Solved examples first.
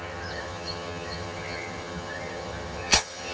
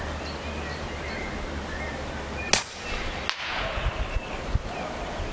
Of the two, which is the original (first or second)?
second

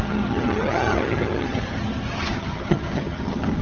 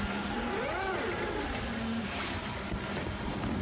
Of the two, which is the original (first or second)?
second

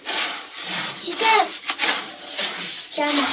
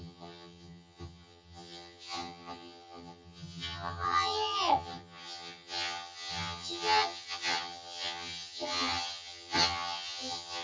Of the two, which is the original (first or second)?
first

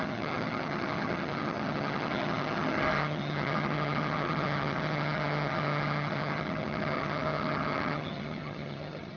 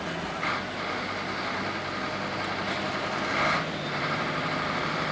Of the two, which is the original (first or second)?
second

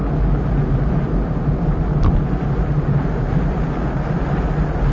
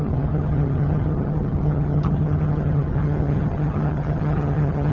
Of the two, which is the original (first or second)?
first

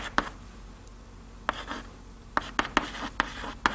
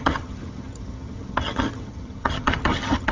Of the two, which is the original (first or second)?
first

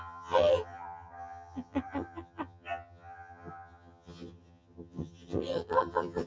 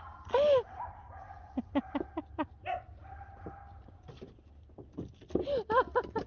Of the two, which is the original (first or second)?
second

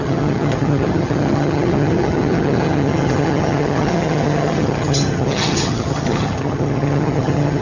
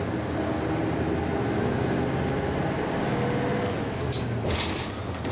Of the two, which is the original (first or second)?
second